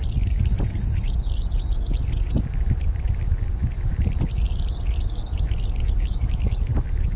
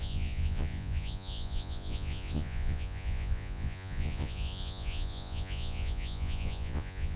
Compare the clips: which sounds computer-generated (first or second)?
second